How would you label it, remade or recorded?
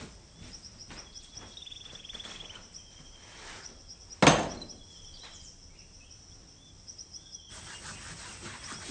recorded